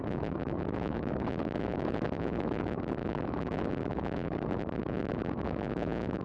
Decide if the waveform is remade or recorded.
remade